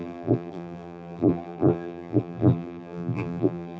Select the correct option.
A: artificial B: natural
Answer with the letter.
A